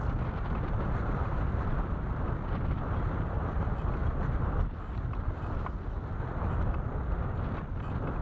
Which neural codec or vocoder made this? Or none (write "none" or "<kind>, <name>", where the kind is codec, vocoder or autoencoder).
none